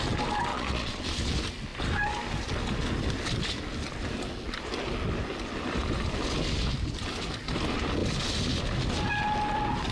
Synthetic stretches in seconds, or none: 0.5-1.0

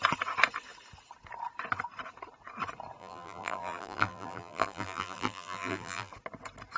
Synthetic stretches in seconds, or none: 3.0-6.1

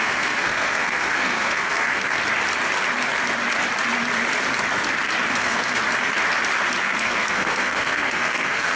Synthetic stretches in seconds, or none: 0.0-2.2; 5.3-5.8; 6.8-8.8

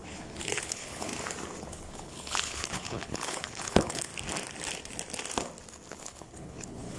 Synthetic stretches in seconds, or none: 0.0-1.1; 1.6-4.1; 6.0-7.0

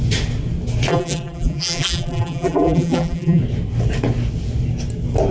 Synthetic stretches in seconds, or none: 0.9-3.4

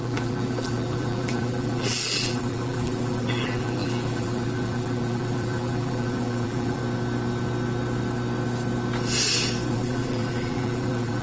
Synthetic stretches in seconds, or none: 0.0-6.8; 9.7-11.2